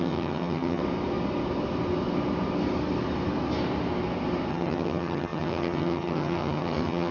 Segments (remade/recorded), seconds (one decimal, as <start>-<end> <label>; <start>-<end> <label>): 0.0-0.8 remade; 0.8-4.5 recorded; 4.5-7.1 remade